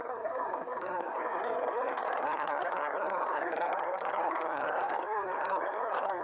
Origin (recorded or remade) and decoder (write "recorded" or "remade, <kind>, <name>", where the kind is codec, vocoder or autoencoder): remade, codec, SNAC